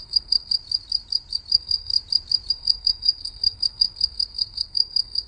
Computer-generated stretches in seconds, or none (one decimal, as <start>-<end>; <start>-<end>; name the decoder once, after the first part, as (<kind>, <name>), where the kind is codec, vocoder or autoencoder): 0.0-0.6 (codec, SNAC); 1.5-1.9; 2.5-5.3